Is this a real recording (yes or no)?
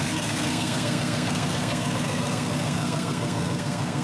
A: no